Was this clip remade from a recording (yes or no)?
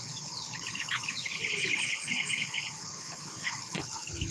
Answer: yes